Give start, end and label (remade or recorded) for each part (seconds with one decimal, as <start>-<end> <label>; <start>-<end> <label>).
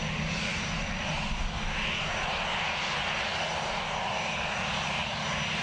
0.0-5.6 recorded